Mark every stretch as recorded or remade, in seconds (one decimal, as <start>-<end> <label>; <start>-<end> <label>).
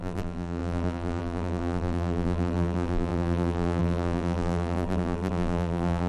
0.0-6.1 remade